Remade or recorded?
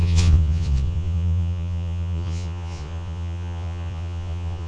remade